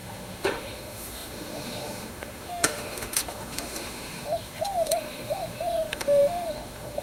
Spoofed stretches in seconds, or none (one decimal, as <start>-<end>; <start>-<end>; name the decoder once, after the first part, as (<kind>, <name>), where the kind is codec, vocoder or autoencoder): 0.0-7.0 (autoencoder, DAC-VAE)